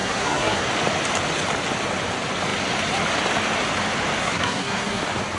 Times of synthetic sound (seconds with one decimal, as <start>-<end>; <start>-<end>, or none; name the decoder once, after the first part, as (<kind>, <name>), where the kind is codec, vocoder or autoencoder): 0.0-0.7 (codec, SNAC); 4.2-5.0